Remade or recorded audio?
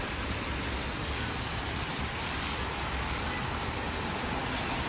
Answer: recorded